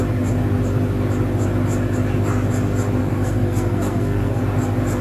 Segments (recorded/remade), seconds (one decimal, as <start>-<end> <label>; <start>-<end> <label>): 0.0-3.0 recorded; 3.0-4.4 remade; 4.4-5.0 recorded